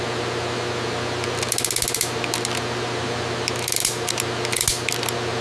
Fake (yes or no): no